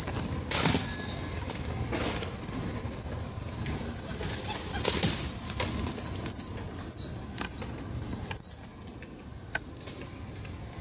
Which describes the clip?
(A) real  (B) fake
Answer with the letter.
A